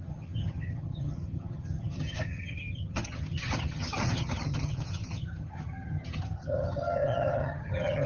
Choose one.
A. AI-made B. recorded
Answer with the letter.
A